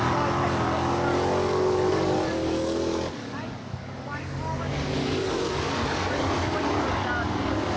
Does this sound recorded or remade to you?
remade